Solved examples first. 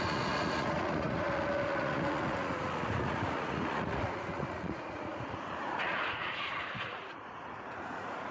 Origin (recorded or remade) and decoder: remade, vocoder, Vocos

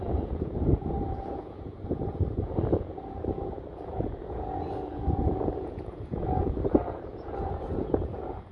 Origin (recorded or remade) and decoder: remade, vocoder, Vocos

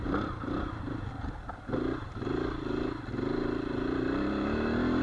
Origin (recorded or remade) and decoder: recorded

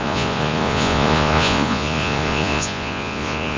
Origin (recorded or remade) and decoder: remade, vocoder, Vocos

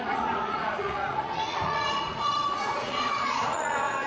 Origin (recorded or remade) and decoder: remade, vocoder, Vocos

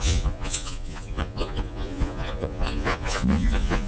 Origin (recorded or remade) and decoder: remade, vocoder, Vocos